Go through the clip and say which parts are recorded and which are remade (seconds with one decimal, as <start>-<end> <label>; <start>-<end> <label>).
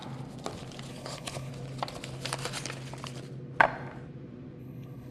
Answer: 0.0-0.9 recorded; 0.9-1.5 remade; 1.5-4.6 recorded; 4.6-5.1 remade